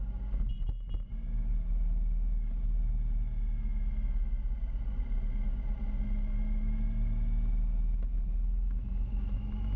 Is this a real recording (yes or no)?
yes